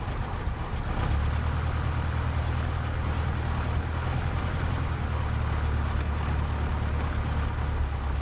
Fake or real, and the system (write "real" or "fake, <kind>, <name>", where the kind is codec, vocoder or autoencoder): real